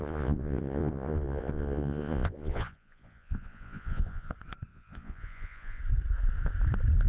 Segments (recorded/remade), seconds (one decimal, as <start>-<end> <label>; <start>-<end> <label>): 0.0-4.3 remade; 4.3-4.7 recorded; 4.7-5.8 remade; 5.8-7.1 recorded